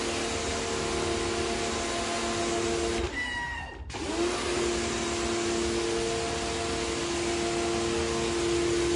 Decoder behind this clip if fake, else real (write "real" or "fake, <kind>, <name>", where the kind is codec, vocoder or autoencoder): real